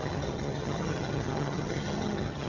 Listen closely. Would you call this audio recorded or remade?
remade